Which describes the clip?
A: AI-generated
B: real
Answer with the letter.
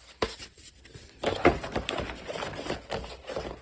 B